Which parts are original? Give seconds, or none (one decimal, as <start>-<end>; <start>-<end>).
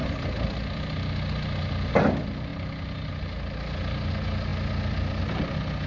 0.0-5.9